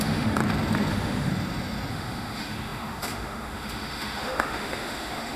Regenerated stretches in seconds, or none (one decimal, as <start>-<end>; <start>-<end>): 0.0-0.4; 0.9-1.3; 1.9-5.4